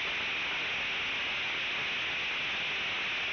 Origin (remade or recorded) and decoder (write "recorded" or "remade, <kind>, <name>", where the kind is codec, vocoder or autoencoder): recorded